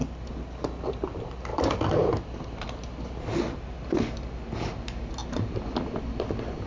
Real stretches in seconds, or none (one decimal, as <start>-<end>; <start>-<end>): 0.0-1.5; 2.8-5.2; 5.8-6.7